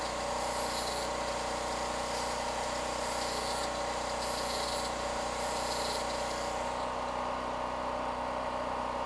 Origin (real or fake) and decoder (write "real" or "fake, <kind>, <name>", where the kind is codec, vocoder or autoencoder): real